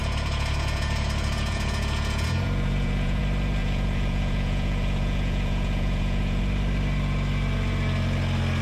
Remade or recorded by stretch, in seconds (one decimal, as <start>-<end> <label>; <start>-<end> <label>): 0.0-3.2 remade; 3.2-3.6 recorded; 3.6-6.4 remade; 6.4-8.6 recorded